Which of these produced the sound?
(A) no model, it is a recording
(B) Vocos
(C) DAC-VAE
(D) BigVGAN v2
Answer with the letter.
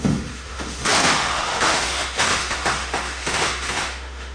C